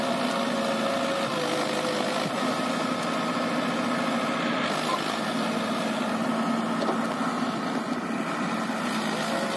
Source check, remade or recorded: recorded